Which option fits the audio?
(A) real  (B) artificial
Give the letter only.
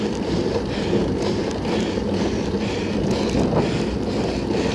A